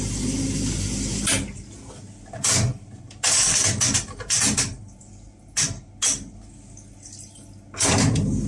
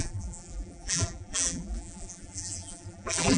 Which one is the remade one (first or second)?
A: second